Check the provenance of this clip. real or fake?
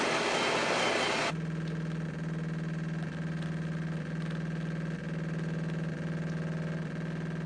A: real